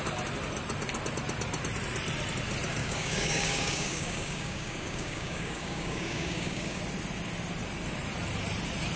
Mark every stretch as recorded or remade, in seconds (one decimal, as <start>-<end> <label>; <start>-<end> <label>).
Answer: 0.0-2.8 recorded; 2.8-6.8 remade; 6.8-9.0 recorded